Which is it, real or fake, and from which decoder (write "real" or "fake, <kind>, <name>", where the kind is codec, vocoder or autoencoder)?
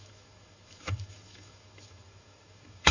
fake, autoencoder, DAC-VAE